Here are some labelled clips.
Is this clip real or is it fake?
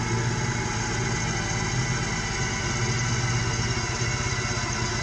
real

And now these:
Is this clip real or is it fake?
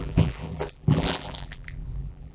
fake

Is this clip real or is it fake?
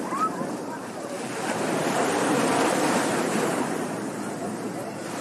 fake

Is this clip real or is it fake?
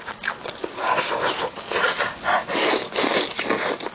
real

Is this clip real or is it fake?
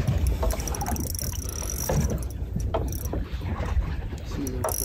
real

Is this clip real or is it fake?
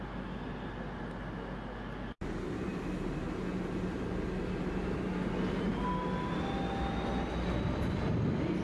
real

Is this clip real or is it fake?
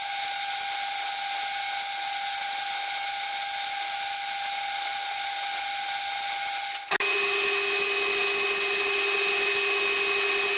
real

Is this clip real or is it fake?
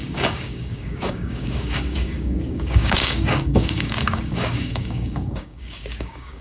fake